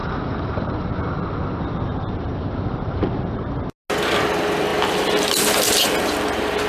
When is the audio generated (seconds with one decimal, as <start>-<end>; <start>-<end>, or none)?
0.0-0.9; 1.9-3.4